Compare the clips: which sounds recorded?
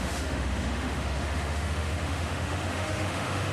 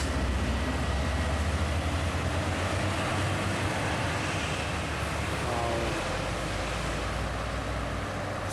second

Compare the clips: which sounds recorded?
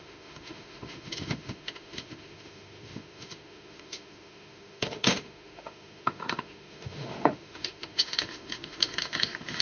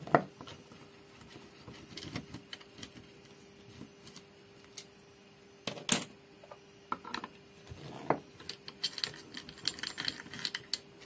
second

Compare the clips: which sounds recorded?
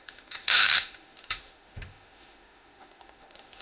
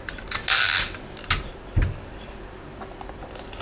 second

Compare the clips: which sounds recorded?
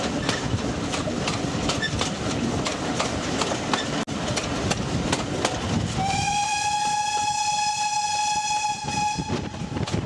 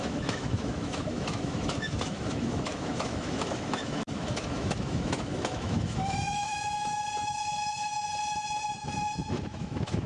first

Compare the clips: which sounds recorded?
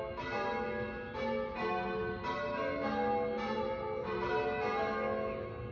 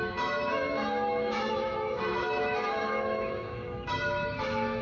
first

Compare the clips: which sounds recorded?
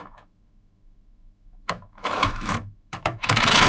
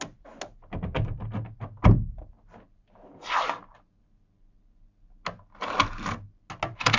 second